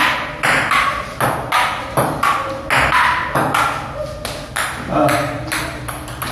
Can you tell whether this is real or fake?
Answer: real